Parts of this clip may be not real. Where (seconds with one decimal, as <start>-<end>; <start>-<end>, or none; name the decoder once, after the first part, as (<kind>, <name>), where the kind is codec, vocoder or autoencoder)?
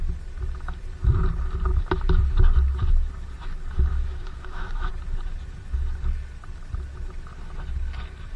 3.9-4.9 (autoencoder, DAC-VAE)